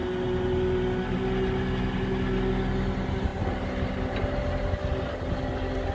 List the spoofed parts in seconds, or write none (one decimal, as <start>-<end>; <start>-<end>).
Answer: none